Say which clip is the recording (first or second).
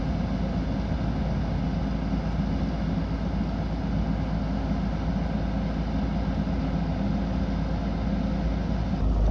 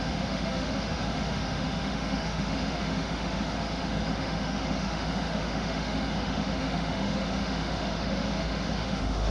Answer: first